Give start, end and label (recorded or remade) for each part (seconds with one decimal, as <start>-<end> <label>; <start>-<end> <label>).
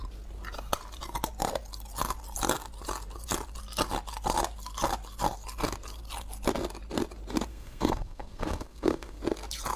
0.0-7.5 recorded; 7.5-9.2 remade; 9.2-9.8 recorded